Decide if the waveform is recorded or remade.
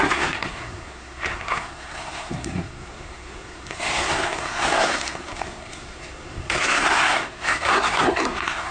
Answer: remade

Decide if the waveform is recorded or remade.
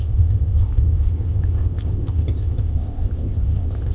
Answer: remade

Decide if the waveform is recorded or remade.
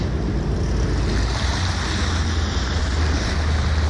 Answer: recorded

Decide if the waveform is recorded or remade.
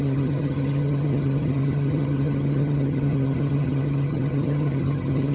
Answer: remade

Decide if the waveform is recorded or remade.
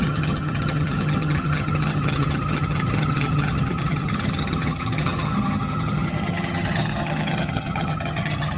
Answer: remade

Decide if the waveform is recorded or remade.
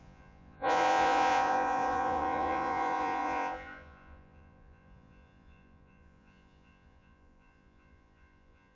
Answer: remade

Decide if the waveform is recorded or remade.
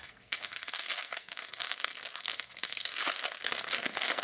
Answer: remade